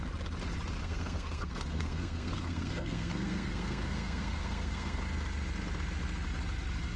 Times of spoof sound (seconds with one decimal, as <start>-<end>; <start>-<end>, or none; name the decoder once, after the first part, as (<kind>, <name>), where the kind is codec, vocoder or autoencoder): 0.8-5.0 (codec, SNAC)